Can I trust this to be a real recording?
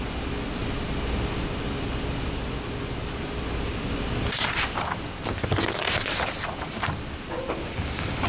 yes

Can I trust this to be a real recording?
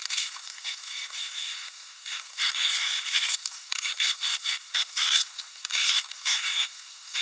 no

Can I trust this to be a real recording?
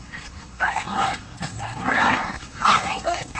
no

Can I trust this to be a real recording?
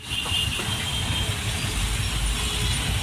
yes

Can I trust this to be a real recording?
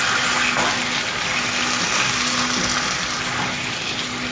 yes